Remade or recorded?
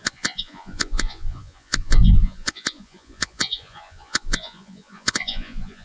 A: remade